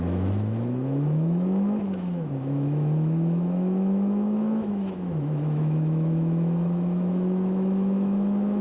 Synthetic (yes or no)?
yes